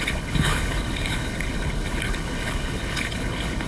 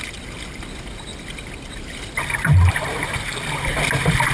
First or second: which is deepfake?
first